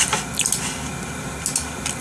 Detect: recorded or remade recorded